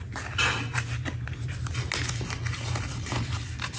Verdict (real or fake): real